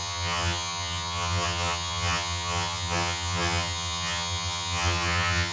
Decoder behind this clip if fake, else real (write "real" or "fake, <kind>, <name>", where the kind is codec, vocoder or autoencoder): fake, vocoder, HiFi-GAN